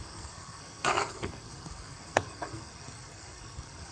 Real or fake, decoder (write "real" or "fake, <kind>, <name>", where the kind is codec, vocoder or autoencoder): fake, codec, SNAC